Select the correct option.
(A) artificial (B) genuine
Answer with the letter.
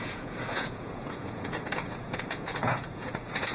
A